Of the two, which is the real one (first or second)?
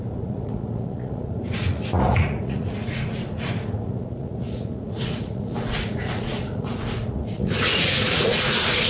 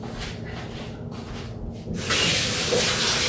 second